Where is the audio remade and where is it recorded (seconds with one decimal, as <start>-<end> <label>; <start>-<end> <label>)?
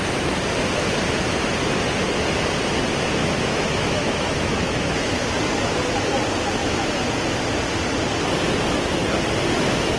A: 0.0-3.2 recorded; 3.2-5.3 remade; 5.3-6.6 recorded; 6.6-7.1 remade; 7.1-10.0 recorded